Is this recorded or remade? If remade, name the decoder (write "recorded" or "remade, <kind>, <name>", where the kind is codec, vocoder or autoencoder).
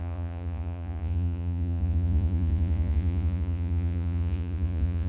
remade, vocoder, Vocos